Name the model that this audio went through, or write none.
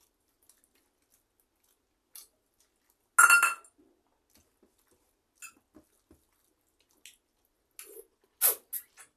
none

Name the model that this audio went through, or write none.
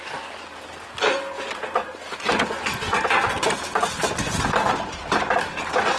none